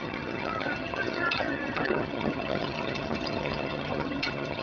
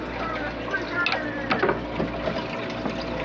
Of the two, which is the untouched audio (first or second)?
second